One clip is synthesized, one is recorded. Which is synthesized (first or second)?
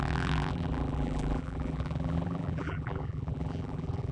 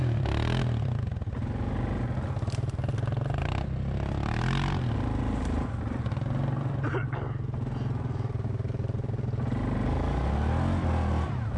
first